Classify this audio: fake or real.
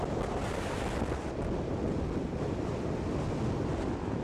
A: real